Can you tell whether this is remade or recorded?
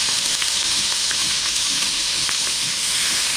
remade